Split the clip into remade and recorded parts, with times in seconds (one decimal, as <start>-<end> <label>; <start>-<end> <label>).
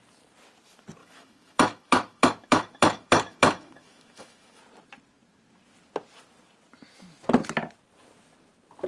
0.0-1.0 recorded; 1.0-4.6 remade; 4.6-8.9 recorded